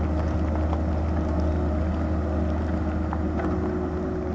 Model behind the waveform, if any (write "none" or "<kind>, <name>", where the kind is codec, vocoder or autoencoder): none